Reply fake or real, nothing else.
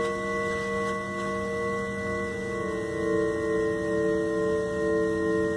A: real